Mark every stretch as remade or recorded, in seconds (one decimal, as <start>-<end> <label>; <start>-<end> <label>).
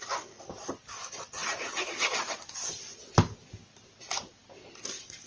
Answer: 0.0-5.3 recorded